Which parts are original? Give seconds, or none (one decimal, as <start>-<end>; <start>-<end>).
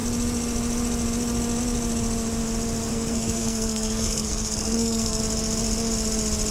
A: 0.0-2.9; 5.2-6.5